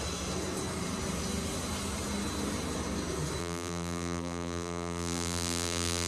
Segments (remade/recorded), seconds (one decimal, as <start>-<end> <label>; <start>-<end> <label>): 0.0-3.4 recorded; 3.4-6.1 remade